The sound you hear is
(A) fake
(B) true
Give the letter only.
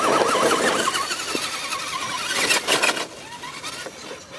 B